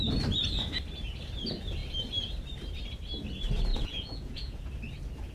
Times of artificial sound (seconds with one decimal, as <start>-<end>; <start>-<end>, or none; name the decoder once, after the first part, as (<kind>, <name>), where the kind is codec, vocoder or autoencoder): 3.7-4.6 (vocoder, Vocos)